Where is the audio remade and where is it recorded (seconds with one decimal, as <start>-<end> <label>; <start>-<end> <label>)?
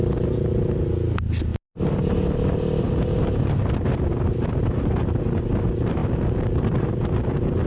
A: 0.0-7.7 recorded